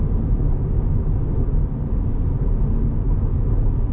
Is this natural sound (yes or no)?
yes